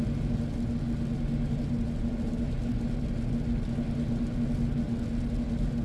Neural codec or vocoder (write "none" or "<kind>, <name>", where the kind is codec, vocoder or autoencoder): none